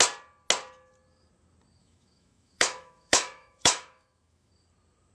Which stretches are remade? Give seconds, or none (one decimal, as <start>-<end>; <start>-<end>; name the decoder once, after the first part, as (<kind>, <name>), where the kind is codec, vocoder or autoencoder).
1.8-4.5 (autoencoder, DAC-VAE)